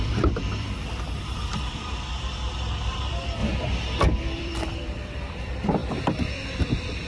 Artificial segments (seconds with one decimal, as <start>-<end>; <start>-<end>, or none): 0.0-3.4; 4.0-5.8; 6.6-7.1